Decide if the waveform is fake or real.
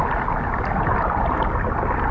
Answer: real